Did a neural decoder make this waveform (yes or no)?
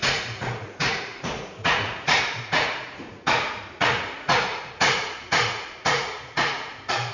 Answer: yes